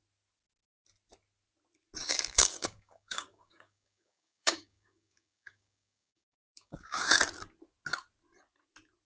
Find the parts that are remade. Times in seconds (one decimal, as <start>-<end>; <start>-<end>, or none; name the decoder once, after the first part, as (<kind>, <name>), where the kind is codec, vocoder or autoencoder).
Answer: 2.0-7.2 (codec, DAC)